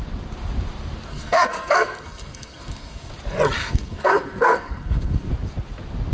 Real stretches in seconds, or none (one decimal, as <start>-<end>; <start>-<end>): 0.0-1.1; 3.1-3.6; 5.3-6.1